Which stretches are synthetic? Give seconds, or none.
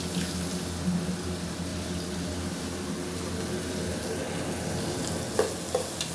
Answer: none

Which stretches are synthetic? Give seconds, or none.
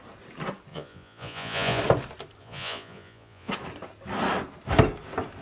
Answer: 0.7-1.8 (vocoder, Vocos); 2.4-3.5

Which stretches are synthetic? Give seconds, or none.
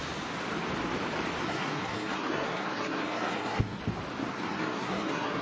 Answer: 1.4-3.8 (codec, SNAC); 4.3-5.4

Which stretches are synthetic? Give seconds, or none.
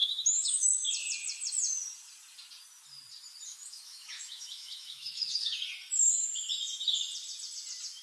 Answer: 0.0-0.9 (autoencoder, DAC-VAE); 3.5-5.6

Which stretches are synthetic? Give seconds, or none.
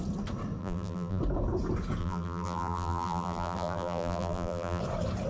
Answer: 0.6-1.2 (vocoder, BigVGAN v2); 2.0-4.8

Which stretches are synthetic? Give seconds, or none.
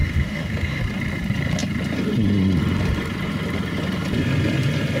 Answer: 0.0-0.8 (autoencoder, DAC-VAE)